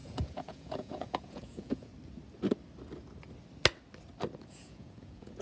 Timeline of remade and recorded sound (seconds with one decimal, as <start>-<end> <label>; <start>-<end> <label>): 0.0-1.9 remade; 1.9-4.4 recorded; 4.4-5.4 remade